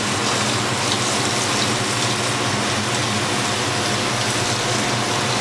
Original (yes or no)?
yes